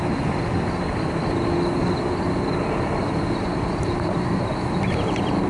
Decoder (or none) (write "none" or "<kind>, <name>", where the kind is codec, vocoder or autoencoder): none